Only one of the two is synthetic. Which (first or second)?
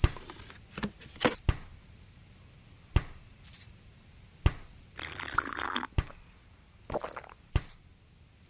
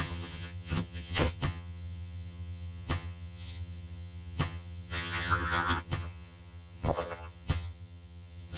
second